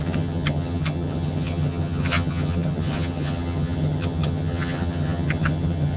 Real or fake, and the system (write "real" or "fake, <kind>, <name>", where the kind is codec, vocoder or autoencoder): fake, vocoder, HiFi-GAN